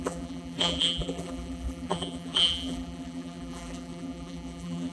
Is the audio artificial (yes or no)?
yes